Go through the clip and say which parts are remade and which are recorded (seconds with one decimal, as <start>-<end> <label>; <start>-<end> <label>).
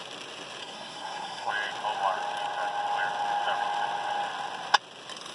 0.0-0.6 recorded; 0.6-1.5 remade; 1.5-5.3 recorded